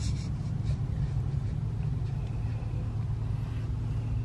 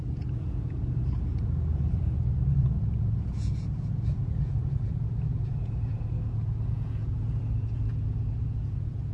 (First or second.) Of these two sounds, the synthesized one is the second